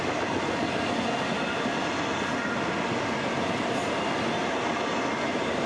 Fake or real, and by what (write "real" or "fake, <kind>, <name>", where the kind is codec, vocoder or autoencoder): real